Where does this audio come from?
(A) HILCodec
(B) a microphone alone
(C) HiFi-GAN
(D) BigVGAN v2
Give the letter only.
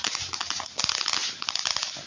B